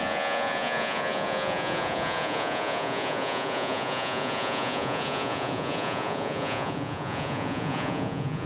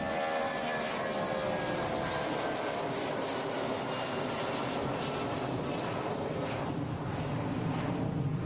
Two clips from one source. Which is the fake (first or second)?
first